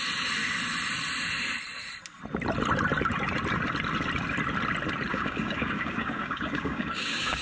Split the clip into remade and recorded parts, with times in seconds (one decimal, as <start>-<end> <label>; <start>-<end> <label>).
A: 0.0-5.1 recorded; 5.1-7.4 remade